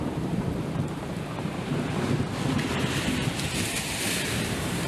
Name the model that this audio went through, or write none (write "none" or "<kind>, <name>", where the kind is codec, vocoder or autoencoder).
vocoder, BigVGAN v2